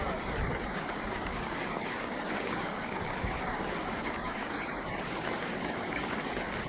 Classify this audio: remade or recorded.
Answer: remade